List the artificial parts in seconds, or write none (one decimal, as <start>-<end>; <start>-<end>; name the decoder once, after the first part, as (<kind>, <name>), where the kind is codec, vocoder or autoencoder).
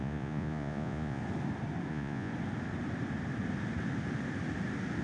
0.0-1.2 (vocoder, Vocos); 1.9-2.3